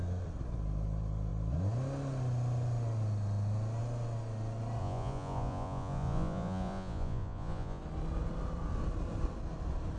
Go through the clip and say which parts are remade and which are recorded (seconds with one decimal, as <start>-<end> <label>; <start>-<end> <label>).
0.0-4.8 recorded; 4.8-7.8 remade; 7.8-10.0 recorded